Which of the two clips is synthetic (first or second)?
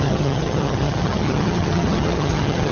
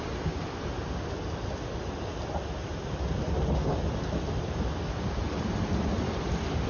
first